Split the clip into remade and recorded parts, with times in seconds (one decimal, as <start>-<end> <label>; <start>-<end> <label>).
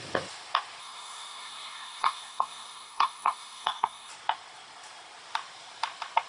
0.0-0.8 recorded; 0.8-4.1 remade; 4.1-6.3 recorded